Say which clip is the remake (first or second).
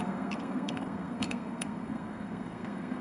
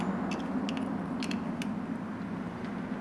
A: first